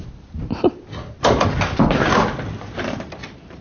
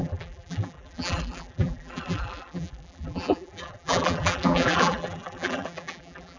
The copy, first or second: second